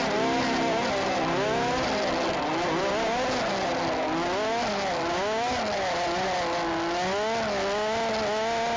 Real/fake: real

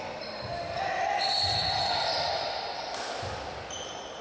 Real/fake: real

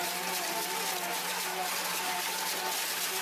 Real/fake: real